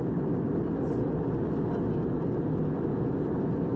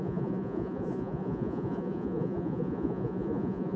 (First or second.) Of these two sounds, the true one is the first